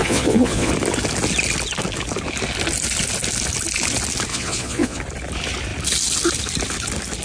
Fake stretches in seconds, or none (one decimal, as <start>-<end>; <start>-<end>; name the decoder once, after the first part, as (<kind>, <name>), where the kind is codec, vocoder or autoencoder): 0.0-0.7 (vocoder, Vocos); 4.3-5.0